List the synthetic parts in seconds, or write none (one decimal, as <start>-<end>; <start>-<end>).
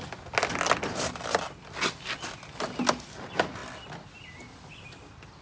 none